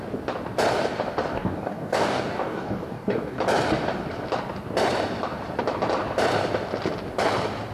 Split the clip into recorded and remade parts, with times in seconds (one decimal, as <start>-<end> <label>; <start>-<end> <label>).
0.0-1.3 recorded; 1.3-3.4 remade; 3.4-7.7 recorded